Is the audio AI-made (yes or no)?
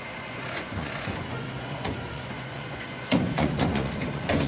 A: yes